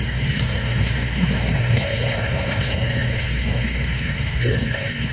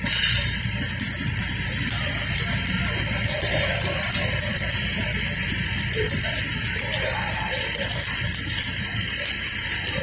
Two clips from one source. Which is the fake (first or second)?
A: first